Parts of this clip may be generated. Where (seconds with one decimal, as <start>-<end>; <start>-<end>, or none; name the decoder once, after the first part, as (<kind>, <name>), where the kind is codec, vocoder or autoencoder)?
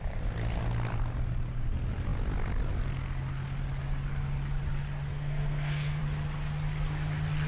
5.1-6.0 (codec, SNAC)